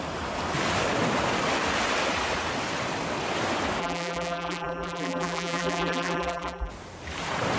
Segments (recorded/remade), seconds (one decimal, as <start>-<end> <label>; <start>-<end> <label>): 0.0-3.8 recorded; 3.8-6.7 remade; 6.7-7.6 recorded

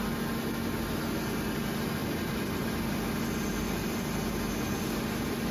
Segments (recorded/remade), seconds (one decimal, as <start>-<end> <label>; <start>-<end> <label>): 0.0-2.0 recorded; 2.0-2.7 remade; 2.7-5.5 recorded

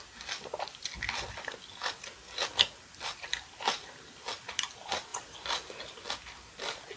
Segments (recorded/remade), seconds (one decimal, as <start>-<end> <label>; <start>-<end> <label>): 0.0-7.0 recorded

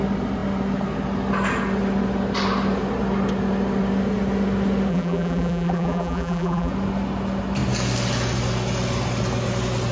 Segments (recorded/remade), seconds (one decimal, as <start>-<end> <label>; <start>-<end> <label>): 0.0-4.9 recorded; 4.9-6.7 remade; 6.7-9.9 recorded

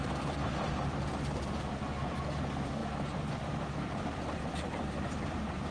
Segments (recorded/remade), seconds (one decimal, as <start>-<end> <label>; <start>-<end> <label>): 0.0-5.7 remade

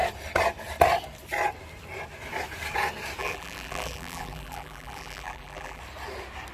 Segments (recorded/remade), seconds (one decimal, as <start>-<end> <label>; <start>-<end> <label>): 0.0-3.2 recorded; 3.2-5.8 remade; 5.8-6.5 recorded

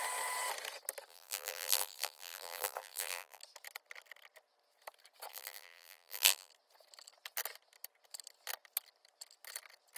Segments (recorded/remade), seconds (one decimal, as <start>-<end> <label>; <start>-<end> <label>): 0.0-1.1 recorded; 1.1-3.4 remade; 3.4-5.3 recorded; 5.3-6.5 remade; 6.5-10.0 recorded

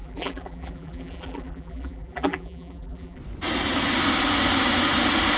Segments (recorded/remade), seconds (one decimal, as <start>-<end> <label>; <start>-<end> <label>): 0.0-3.2 remade; 3.2-5.4 recorded